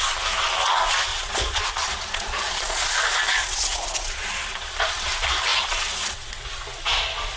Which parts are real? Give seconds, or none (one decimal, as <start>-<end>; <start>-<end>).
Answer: 0.0-1.1; 2.9-3.4; 5.1-5.5; 6.6-7.4